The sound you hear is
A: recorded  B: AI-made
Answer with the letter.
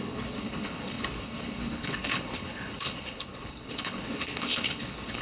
B